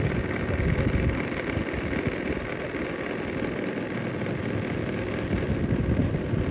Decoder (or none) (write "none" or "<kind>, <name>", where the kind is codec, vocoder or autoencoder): none